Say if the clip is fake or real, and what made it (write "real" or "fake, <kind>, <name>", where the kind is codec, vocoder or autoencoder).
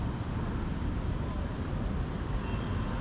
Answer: real